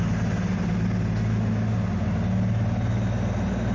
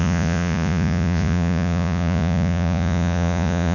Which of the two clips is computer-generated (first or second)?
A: second